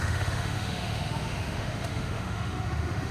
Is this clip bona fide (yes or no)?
no